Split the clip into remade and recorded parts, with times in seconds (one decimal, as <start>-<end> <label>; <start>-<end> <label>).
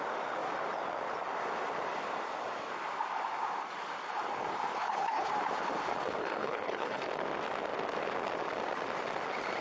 0.0-4.7 recorded; 4.7-5.3 remade; 5.3-6.2 recorded; 6.2-7.0 remade; 7.0-9.6 recorded